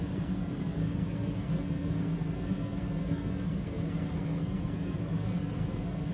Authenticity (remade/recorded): remade